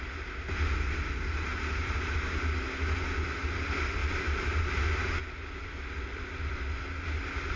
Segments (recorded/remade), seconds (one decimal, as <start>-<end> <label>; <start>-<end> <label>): 0.0-4.0 recorded; 4.0-4.8 remade; 4.8-7.6 recorded